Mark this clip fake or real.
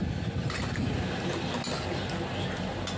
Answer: real